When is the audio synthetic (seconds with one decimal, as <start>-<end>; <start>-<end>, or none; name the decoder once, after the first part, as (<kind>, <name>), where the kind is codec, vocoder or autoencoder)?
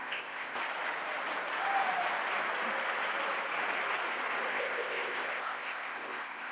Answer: 0.0-0.6 (codec, ZipCodec); 4.5-6.5